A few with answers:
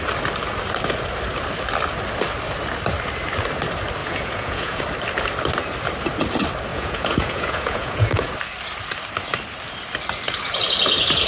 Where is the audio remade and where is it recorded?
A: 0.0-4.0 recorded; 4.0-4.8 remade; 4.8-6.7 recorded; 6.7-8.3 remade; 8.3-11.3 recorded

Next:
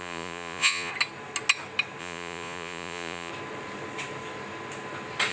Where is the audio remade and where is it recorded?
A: 0.0-0.9 remade; 0.9-2.0 recorded; 2.0-3.3 remade; 3.3-5.3 recorded

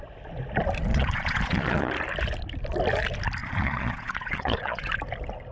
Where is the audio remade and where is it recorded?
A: 0.0-0.9 recorded; 0.9-1.9 remade; 1.9-3.4 recorded; 3.4-4.9 remade; 4.9-5.5 recorded

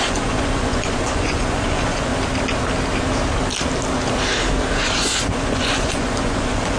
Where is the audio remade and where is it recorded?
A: 0.0-2.1 remade; 2.1-4.7 recorded; 4.7-6.8 remade

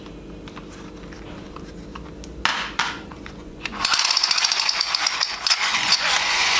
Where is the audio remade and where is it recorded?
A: 0.0-2.5 recorded; 2.5-6.6 remade

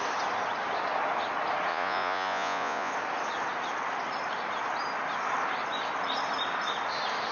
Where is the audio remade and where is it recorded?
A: 0.0-1.7 recorded; 1.7-2.9 remade; 2.9-7.3 recorded

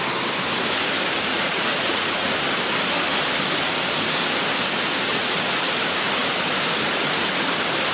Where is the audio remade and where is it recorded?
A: 0.0-1.3 recorded; 1.3-2.3 remade; 2.3-5.1 recorded; 5.1-5.7 remade; 5.7-7.9 recorded

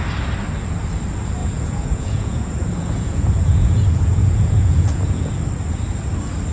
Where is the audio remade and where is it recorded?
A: 0.0-1.4 recorded; 1.4-5.3 remade; 5.3-6.5 recorded